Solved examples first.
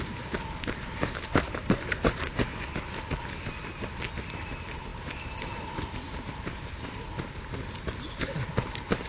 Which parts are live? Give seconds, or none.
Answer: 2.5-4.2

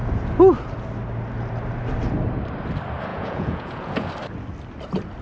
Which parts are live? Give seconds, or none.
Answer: 0.0-3.1; 4.1-5.2